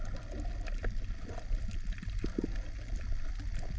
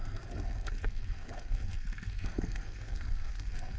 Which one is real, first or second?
first